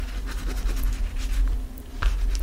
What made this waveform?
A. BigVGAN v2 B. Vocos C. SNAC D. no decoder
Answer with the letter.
D